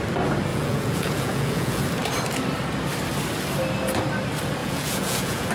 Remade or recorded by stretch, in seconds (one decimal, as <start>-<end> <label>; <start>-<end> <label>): 0.0-0.5 recorded; 0.5-1.8 remade; 1.8-4.6 recorded; 4.6-5.5 remade